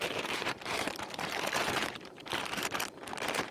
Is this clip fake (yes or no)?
yes